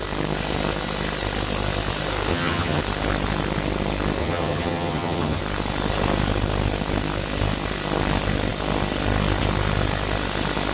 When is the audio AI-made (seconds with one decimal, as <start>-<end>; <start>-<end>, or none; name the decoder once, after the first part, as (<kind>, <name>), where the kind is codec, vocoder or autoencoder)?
2.3-2.8 (vocoder, HiFi-GAN); 4.2-5.4